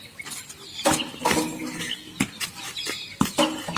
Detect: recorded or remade recorded